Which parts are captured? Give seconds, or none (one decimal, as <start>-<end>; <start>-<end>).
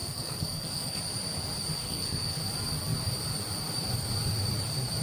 1.0-1.8; 2.4-5.0